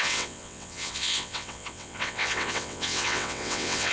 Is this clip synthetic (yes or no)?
yes